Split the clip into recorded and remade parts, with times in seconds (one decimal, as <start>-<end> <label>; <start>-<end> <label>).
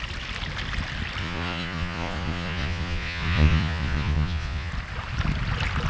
0.0-1.2 recorded; 1.2-4.7 remade; 4.7-5.9 recorded